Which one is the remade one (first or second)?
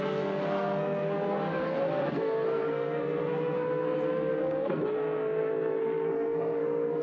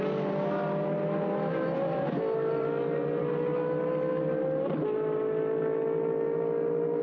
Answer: first